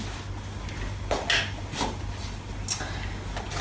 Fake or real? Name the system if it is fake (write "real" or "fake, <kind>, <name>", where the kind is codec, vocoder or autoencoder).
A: real